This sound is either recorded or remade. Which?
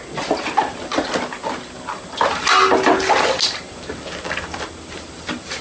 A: recorded